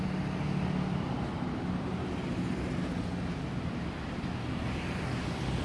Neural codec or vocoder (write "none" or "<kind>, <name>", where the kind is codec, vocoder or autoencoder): none